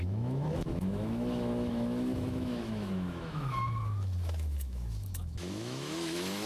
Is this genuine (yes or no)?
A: no